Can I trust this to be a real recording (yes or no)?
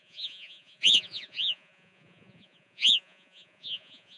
no